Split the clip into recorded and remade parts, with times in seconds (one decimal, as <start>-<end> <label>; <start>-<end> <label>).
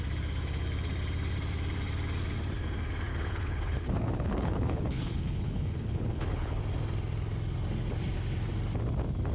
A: 0.0-3.1 recorded; 3.1-6.6 remade; 6.6-9.3 recorded